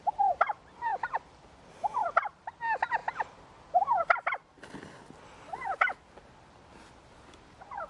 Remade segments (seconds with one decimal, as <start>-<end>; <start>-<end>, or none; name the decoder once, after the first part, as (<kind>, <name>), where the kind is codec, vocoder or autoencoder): none